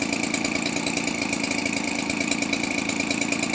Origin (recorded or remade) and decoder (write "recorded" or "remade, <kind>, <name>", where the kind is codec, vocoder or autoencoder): recorded